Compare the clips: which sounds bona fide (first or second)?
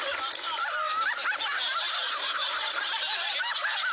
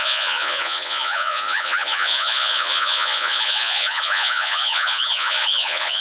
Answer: first